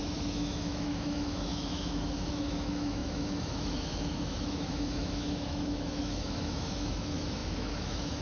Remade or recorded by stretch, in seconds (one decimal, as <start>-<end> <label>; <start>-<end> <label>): 0.0-8.2 remade